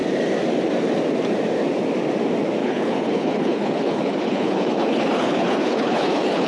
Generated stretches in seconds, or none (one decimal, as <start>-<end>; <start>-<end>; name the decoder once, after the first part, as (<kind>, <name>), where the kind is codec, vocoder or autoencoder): 2.6-6.5 (codec, HILCodec)